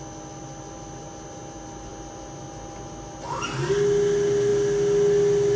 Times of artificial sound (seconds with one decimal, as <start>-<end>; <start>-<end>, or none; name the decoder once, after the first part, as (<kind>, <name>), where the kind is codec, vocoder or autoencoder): none